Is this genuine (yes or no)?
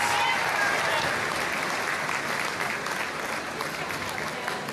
yes